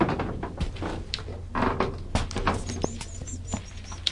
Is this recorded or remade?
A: recorded